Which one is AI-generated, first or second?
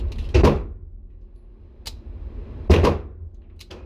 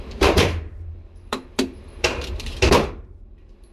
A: second